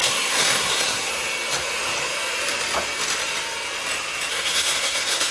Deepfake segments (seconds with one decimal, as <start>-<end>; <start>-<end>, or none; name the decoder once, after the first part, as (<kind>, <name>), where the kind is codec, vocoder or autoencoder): 0.0-1.1 (codec, SNAC); 4.3-5.3